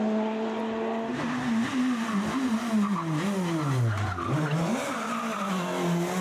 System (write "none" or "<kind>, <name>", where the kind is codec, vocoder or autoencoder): none